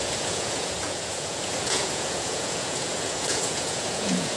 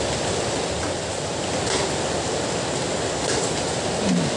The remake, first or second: first